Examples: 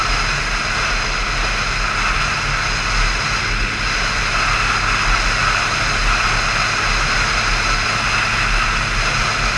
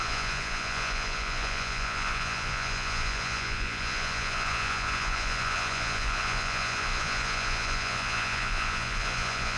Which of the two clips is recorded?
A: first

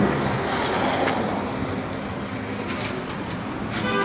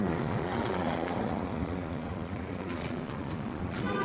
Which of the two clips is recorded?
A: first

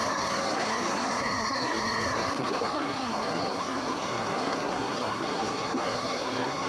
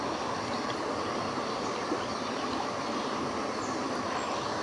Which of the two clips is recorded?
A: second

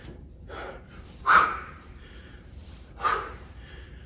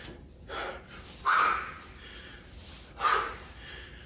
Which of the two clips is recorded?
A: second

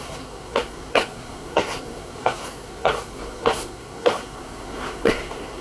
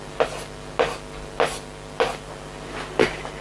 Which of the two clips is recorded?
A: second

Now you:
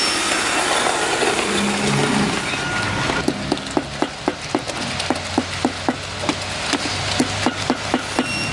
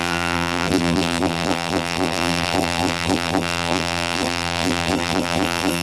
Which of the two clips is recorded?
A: first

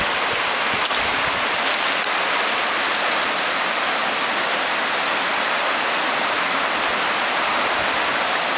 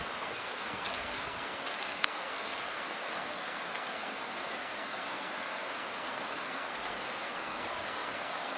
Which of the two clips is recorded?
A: first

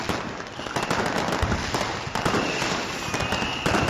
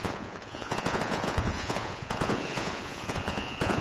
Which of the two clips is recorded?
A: first